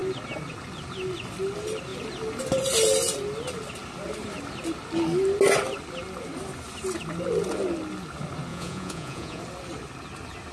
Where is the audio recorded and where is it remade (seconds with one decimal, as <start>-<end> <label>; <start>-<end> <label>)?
0.0-8.5 recorded; 8.5-9.4 remade; 9.4-10.5 recorded